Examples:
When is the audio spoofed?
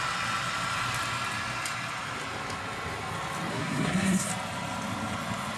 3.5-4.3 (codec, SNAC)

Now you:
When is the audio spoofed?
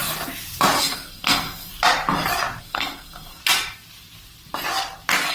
0.8-1.7 (codec, SNAC); 2.6-3.4